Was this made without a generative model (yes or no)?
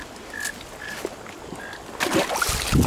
yes